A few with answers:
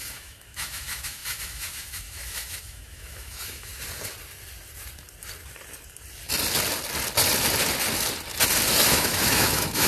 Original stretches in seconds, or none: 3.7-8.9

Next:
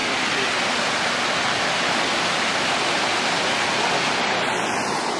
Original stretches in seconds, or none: 0.0-5.2